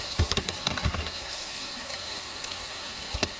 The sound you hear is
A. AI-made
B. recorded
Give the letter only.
A